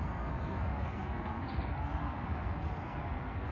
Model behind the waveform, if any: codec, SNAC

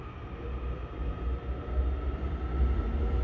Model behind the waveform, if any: none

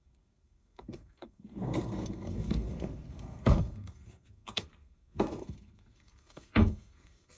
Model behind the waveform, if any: codec, SNAC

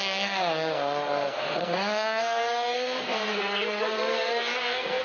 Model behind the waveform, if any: codec, SNAC